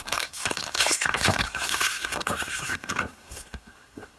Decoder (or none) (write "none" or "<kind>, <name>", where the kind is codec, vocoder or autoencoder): codec, SNAC